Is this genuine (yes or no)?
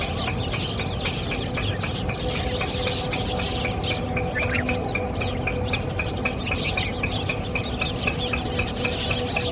yes